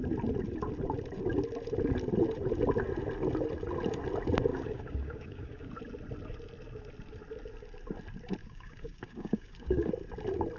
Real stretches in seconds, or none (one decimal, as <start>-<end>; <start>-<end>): 0.0-4.5; 5.7-8.4; 9.9-10.6